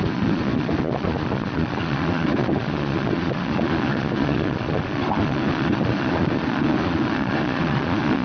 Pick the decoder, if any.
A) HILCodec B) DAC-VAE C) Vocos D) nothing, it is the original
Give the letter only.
C